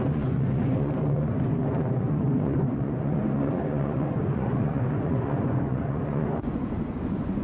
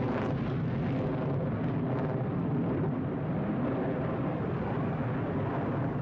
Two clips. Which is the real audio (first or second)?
second